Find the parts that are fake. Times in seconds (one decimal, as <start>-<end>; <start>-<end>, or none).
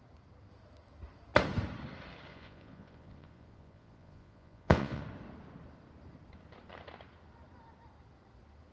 2.3-5.0